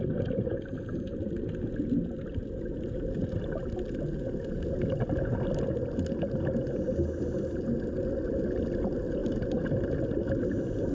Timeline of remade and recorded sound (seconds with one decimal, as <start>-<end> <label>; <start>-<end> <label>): 0.0-10.9 recorded